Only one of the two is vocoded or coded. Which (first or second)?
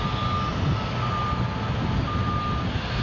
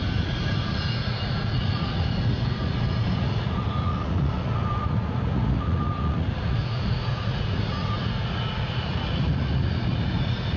second